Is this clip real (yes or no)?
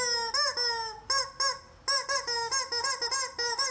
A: yes